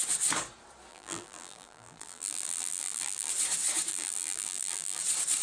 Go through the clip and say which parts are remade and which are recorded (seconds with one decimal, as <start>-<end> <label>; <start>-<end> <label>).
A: 0.0-0.9 recorded; 0.9-3.3 remade; 3.3-3.9 recorded; 3.9-5.0 remade; 5.0-5.4 recorded